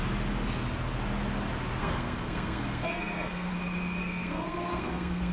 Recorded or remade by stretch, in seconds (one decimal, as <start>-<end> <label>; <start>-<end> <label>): 0.0-1.8 recorded; 1.8-3.5 remade; 3.5-4.0 recorded; 4.0-5.3 remade